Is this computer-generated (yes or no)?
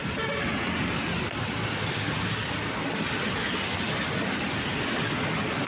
no